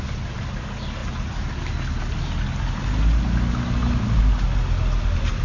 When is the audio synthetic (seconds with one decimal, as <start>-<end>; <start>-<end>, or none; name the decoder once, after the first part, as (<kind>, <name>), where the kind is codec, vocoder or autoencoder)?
none